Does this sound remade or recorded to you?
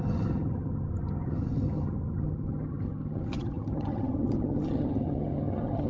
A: remade